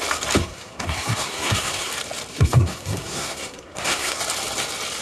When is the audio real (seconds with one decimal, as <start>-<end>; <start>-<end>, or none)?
0.0-0.4; 1.9-2.3; 4.2-5.0